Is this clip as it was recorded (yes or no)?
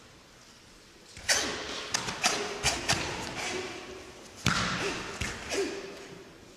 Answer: yes